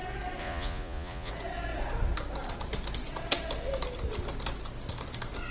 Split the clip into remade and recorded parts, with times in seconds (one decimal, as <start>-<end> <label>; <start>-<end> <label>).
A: 0.0-0.4 recorded; 0.4-1.3 remade; 1.3-5.5 recorded